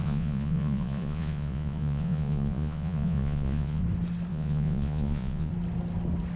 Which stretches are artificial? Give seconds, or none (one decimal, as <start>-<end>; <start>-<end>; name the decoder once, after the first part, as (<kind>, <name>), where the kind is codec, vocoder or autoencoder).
0.0-3.8 (vocoder, Vocos); 4.3-5.5

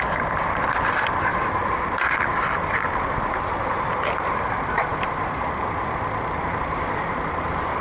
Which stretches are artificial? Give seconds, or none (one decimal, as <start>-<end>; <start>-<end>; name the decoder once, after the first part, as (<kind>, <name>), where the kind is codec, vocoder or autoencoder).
none

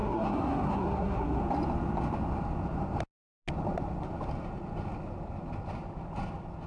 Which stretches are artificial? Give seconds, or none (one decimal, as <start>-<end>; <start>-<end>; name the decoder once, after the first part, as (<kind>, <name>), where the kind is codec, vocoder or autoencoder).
0.0-1.4 (codec, SNAC)

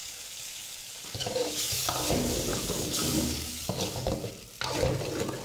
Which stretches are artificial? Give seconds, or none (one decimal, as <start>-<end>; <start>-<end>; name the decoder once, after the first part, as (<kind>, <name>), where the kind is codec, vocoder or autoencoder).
0.0-2.0 (codec, DAC); 2.5-4.3

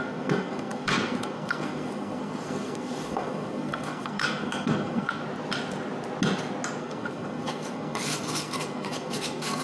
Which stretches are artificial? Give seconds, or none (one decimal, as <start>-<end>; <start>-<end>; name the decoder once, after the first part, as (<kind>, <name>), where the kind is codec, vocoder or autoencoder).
0.0-5.2 (codec, SNAC); 6.8-9.6

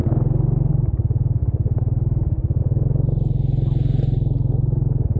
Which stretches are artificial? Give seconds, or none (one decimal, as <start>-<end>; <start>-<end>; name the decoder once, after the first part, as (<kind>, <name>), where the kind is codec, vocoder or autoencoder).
none